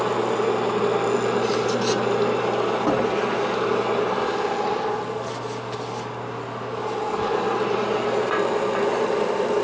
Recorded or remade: recorded